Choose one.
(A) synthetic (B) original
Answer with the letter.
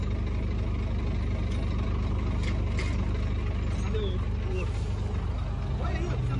B